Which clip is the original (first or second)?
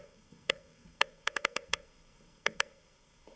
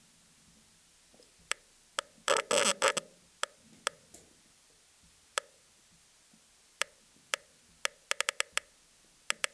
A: second